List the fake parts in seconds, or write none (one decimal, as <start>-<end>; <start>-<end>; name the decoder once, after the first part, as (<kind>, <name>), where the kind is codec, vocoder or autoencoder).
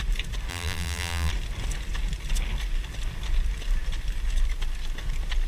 0.5-1.3 (vocoder, BigVGAN v2)